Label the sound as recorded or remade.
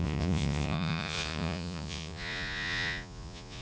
remade